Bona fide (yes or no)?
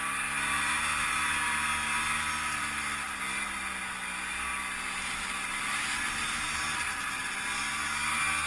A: yes